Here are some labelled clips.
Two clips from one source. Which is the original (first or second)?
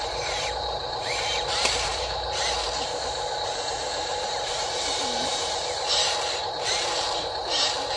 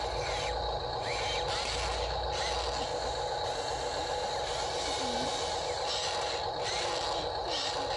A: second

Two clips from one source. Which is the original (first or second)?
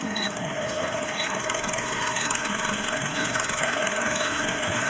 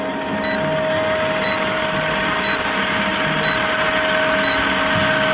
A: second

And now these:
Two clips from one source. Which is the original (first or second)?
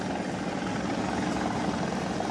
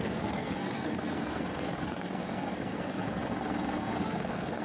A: first